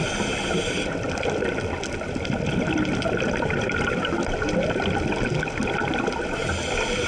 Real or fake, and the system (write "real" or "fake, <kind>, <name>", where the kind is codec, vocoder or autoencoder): real